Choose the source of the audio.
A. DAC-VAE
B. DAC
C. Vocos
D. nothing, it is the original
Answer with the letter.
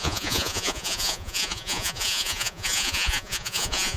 C